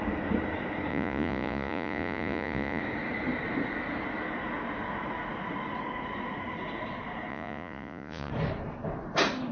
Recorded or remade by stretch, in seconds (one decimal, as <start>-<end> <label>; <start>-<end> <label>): 0.0-0.9 recorded; 0.9-2.8 remade; 2.8-7.3 recorded; 7.3-8.3 remade; 8.3-9.5 recorded